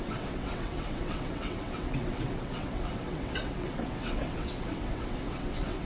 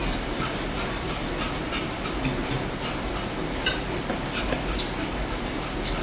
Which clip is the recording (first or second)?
second